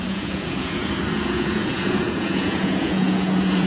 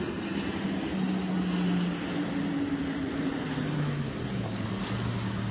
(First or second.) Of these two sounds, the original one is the second